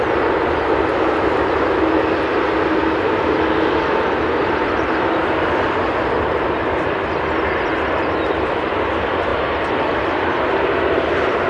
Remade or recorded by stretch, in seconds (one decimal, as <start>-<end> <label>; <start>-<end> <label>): 0.0-11.5 recorded